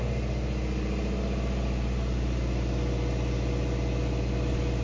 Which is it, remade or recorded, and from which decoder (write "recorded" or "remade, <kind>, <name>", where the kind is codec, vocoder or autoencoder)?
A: recorded